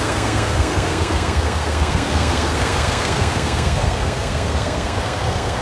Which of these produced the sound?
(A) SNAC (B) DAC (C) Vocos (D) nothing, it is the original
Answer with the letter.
A